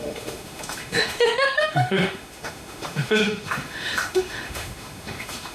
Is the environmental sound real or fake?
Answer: fake